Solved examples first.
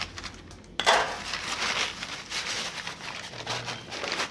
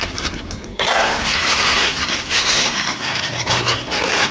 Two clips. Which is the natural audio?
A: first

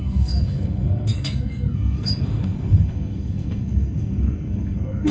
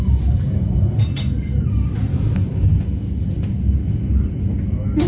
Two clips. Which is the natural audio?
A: second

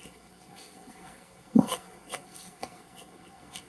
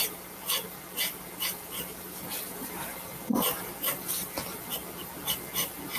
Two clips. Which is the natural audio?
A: second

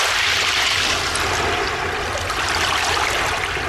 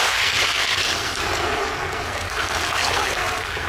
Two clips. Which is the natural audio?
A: first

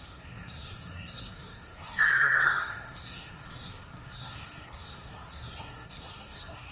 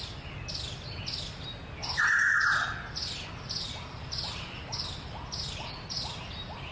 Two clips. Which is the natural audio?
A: second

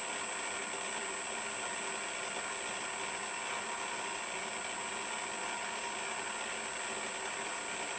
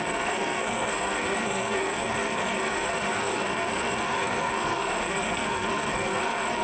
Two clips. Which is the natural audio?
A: first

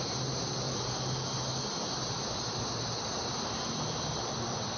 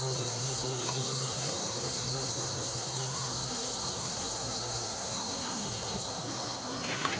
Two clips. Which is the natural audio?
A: first